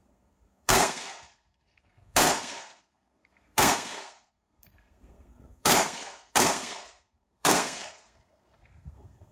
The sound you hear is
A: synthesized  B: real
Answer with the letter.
A